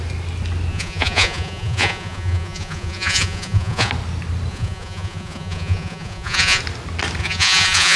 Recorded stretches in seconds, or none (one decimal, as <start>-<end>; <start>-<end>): 0.0-0.7; 3.9-4.5; 6.6-7.2